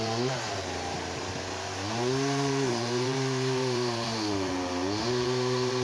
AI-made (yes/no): yes